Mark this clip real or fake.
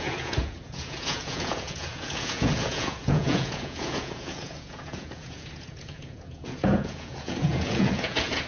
fake